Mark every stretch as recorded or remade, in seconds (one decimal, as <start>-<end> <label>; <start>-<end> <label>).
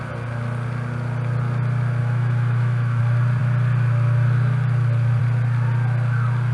0.0-2.0 recorded; 2.0-3.0 remade; 3.0-6.5 recorded